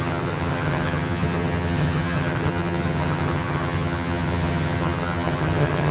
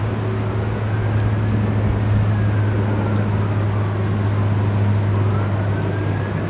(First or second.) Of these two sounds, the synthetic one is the first